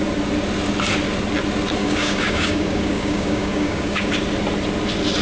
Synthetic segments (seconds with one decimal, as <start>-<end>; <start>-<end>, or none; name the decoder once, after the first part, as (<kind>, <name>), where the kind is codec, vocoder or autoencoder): 1.8-4.1 (codec, DAC)